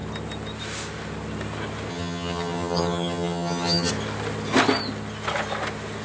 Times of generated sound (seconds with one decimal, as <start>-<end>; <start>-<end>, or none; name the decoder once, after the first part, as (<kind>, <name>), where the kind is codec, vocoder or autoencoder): 1.9-3.9 (vocoder, HiFi-GAN)